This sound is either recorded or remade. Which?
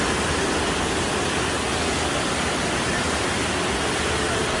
recorded